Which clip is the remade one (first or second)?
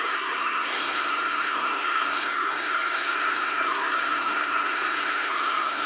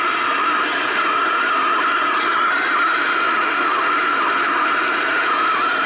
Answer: first